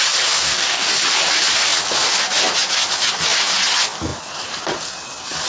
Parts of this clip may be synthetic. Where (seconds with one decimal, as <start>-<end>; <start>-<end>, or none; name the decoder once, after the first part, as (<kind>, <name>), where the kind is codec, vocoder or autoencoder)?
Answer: 0.4-0.9 (codec, DAC)